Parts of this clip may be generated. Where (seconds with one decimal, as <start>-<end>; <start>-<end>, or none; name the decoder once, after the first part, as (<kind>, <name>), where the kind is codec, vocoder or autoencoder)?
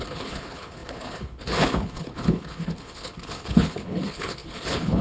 0.0-5.0 (codec, HILCodec)